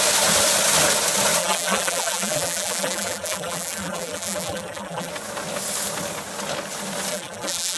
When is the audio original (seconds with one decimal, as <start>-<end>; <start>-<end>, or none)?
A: 0.0-1.4; 5.1-7.1